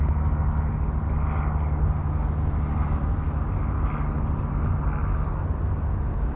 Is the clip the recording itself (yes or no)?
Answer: yes